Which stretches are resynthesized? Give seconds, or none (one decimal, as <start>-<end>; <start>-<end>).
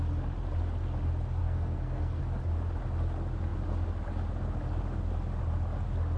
1.4-2.2